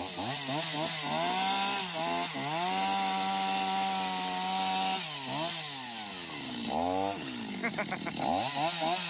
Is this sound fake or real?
real